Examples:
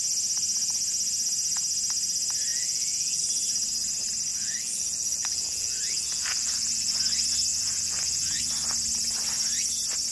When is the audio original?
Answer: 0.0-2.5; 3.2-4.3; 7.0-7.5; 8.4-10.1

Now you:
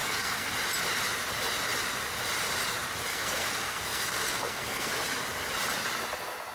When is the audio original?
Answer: 0.5-3.1; 4.9-6.5

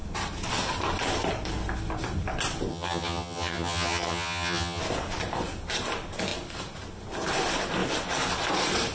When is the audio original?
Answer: 0.0-2.7; 4.8-8.9

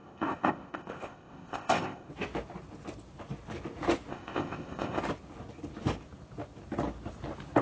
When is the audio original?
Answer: 2.1-4.1; 5.0-7.6

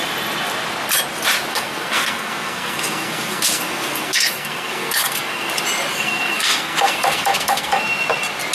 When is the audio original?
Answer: 0.0-1.5; 5.5-5.9; 7.8-8.5

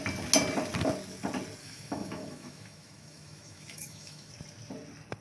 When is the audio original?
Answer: 0.0-1.6; 4.3-5.2